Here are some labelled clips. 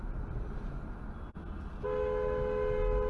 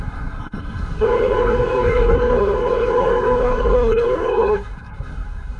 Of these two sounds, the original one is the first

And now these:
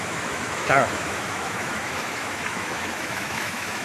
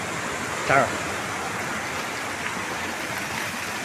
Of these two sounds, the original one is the second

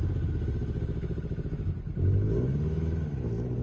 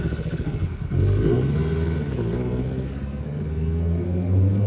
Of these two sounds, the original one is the first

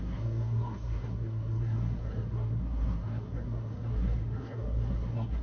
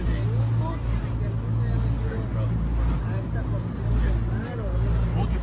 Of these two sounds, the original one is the second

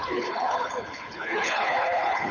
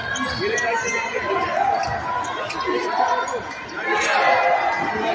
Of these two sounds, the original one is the second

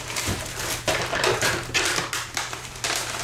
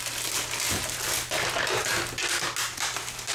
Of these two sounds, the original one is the second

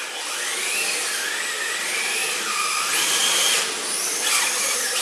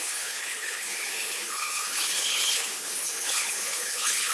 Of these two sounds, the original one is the first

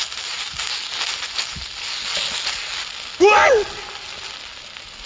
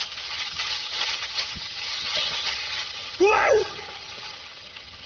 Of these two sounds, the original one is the first